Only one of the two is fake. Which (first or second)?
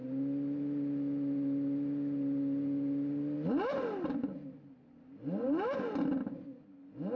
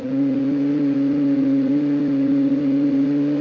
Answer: second